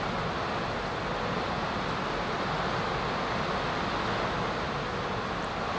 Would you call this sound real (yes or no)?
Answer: yes